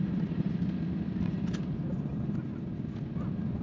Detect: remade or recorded recorded